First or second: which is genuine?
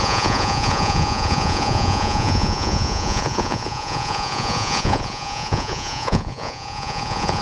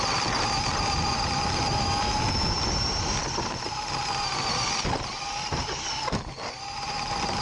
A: second